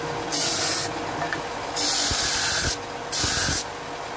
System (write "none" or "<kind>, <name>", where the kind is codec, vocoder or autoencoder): none